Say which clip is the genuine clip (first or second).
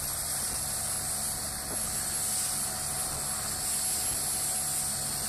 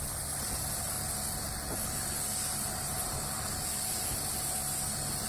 first